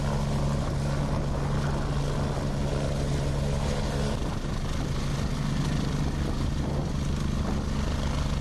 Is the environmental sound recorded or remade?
recorded